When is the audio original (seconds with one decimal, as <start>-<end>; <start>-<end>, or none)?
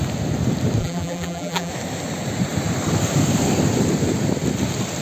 0.0-0.8; 1.7-5.0